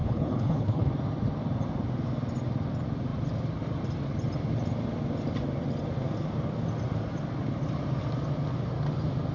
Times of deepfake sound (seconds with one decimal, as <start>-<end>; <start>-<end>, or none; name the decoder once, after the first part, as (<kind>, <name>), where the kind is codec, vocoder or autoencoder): 0.0-0.9 (codec, HILCodec)